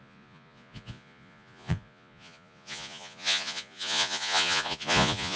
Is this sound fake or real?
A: fake